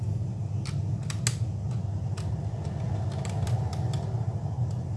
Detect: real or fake real